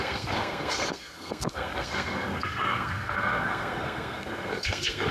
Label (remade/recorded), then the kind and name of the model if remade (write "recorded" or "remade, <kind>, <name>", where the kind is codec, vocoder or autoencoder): remade, codec, SNAC